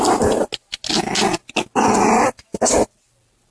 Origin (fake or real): real